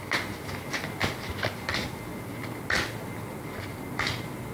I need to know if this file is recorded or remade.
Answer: recorded